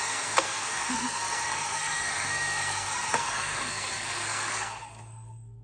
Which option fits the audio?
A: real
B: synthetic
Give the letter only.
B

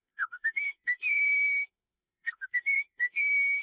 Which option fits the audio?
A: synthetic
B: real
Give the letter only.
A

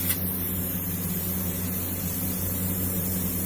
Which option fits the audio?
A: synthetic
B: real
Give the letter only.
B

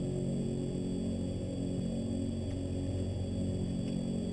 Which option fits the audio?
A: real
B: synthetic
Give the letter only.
A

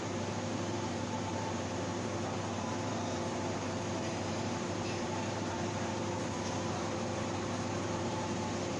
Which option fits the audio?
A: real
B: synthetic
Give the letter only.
B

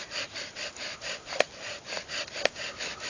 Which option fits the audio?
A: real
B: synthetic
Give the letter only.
A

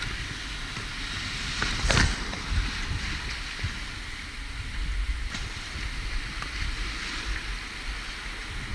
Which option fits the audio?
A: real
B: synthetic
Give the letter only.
A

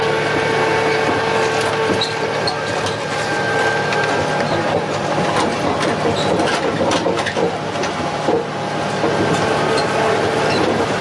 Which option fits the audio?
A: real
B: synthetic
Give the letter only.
A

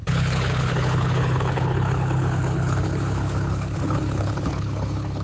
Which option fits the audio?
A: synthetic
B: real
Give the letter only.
A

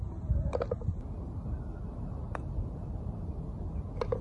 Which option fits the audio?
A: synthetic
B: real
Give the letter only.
B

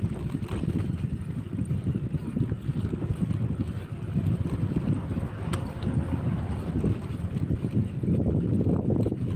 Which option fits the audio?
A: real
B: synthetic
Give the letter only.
A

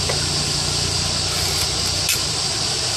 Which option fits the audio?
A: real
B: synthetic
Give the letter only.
A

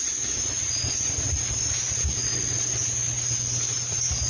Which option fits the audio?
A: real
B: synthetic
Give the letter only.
A